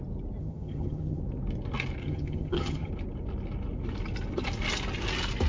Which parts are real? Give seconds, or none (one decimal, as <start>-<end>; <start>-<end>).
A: 0.0-0.4; 1.2-2.0; 2.9-5.5